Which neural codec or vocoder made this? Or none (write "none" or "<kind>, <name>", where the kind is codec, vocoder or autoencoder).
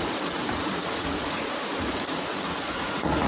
vocoder, Vocos